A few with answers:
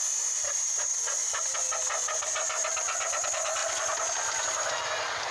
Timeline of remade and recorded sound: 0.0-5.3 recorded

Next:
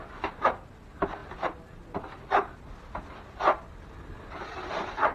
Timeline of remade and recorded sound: 0.0-1.2 recorded; 1.2-4.3 remade; 4.3-5.1 recorded

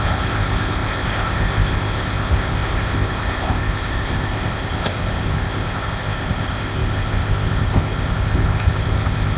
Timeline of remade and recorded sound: 0.0-9.4 remade

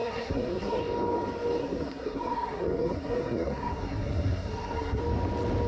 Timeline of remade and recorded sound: 0.0-0.8 remade; 0.8-1.6 recorded; 1.6-5.0 remade; 5.0-5.7 recorded

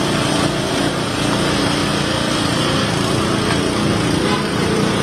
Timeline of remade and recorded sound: 0.0-0.8 recorded; 0.8-1.8 remade; 1.8-4.2 recorded; 4.2-5.0 remade

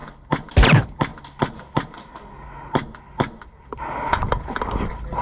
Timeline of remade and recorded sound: 0.0-5.2 recorded

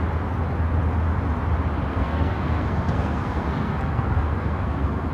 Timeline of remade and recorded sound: 0.0-1.9 recorded; 1.9-5.1 remade

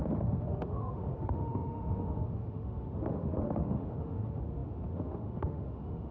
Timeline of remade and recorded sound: 0.0-6.1 remade